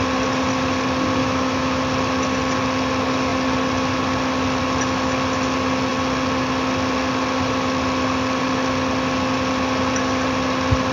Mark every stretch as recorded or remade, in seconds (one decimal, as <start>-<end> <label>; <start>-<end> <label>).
0.0-1.2 recorded; 1.2-1.8 remade; 1.8-10.9 recorded